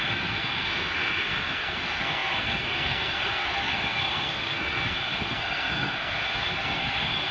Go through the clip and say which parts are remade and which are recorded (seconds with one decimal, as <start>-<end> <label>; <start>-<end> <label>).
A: 0.0-7.3 remade